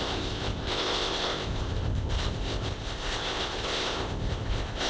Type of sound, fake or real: fake